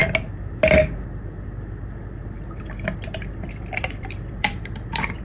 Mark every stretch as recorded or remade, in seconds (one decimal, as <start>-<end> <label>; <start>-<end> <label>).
0.0-3.1 recorded; 3.1-5.2 remade